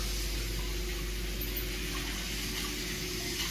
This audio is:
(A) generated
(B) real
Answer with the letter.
B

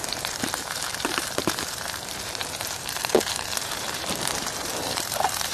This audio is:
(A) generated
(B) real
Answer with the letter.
A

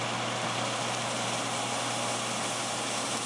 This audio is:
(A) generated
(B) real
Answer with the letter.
B